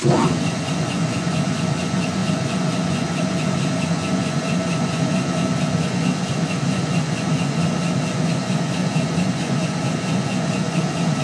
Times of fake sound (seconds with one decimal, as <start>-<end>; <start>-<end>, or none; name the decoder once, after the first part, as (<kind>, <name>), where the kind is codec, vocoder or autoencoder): 0.0-11.2 (vocoder, Vocos)